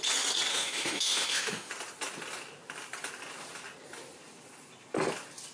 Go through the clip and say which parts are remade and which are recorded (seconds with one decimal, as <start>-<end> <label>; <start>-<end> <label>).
0.0-0.5 recorded; 0.5-1.7 remade; 1.7-5.5 recorded